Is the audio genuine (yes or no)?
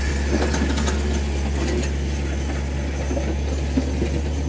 yes